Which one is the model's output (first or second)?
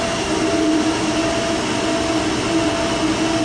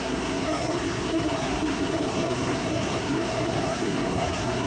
second